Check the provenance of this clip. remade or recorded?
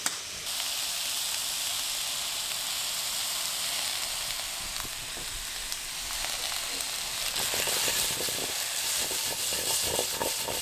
recorded